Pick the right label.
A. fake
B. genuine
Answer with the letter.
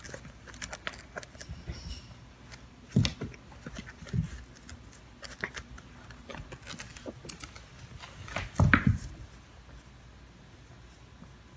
B